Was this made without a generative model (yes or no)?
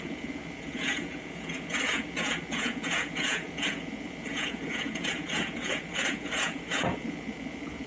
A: no